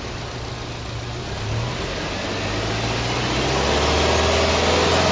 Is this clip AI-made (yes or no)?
no